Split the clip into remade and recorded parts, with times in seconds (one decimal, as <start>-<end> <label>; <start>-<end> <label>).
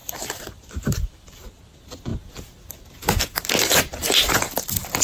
0.0-1.6 remade; 1.6-5.0 recorded